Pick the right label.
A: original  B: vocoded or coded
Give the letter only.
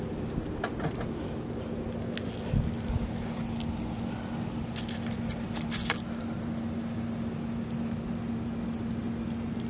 A